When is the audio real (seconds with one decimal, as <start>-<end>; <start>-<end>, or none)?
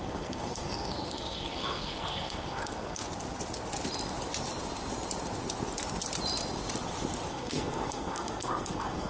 3.0-7.3